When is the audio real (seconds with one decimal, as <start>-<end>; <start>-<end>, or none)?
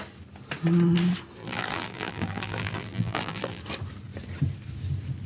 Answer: 0.0-1.4; 3.6-5.3